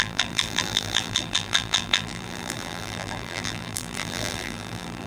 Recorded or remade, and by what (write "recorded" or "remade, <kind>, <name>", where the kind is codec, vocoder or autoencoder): remade, vocoder, BigVGAN v2